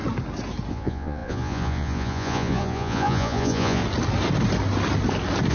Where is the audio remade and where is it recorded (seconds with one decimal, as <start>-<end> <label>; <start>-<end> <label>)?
0.0-0.7 recorded; 0.7-3.8 remade; 3.8-5.5 recorded